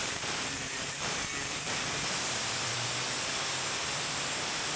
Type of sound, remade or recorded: remade